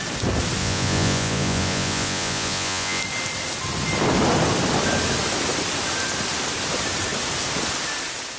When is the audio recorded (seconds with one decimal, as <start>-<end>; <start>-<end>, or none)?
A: 0.0-0.6; 3.0-8.4